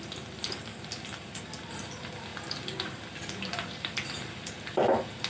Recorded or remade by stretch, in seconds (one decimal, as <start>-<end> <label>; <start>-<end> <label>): 0.0-2.3 recorded; 2.3-4.1 remade; 4.1-5.3 recorded